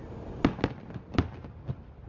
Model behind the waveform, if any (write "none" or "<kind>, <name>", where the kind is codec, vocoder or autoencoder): none